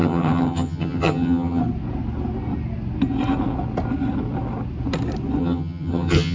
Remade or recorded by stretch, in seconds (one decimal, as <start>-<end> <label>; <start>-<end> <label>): 0.0-1.6 remade; 1.6-5.4 recorded; 5.4-6.3 remade